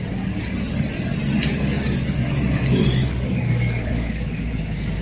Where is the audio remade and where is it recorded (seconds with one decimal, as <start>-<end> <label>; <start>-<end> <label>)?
0.0-1.5 recorded; 1.5-4.5 remade; 4.5-5.0 recorded